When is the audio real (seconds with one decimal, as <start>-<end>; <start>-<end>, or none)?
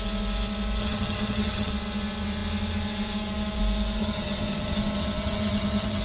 0.0-0.8; 1.7-4.0